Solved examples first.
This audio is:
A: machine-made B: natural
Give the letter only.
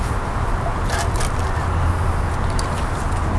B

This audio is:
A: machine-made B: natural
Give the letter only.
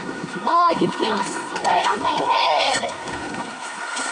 A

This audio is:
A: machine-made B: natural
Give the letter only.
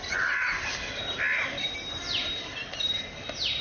B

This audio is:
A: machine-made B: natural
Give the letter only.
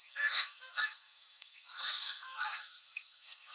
A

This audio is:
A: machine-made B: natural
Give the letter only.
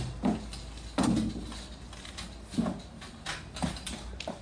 B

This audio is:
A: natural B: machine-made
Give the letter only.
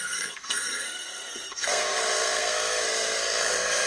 B